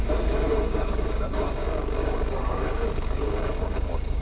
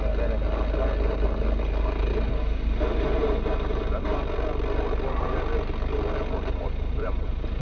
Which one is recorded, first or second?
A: second